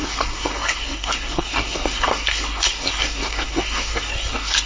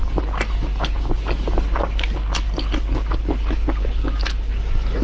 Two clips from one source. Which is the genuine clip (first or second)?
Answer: second